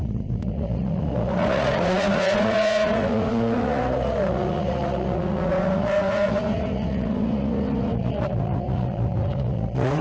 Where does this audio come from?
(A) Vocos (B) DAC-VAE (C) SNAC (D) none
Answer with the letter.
A